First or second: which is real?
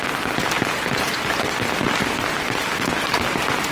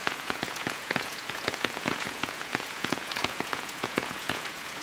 first